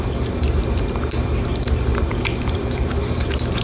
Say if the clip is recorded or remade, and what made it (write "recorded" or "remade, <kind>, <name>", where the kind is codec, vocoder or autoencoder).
remade, vocoder, BigVGAN v2